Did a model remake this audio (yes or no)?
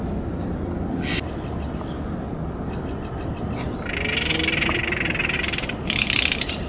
no